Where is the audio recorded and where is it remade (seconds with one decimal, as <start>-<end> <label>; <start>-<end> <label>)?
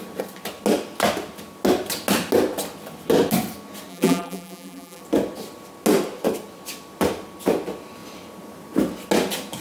0.0-3.9 recorded; 3.9-5.0 remade; 5.0-9.6 recorded